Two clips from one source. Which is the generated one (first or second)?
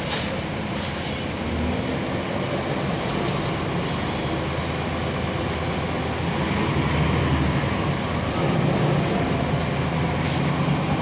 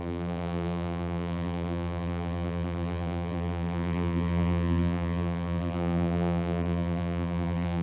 second